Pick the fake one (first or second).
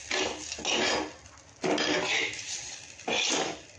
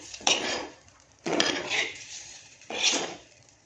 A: second